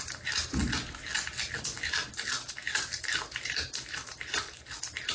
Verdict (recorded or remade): recorded